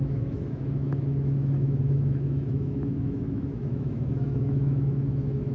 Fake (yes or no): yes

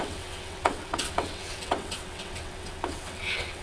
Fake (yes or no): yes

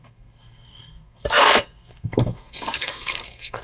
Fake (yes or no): yes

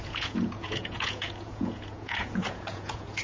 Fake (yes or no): yes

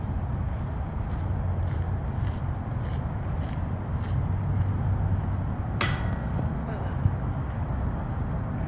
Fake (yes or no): no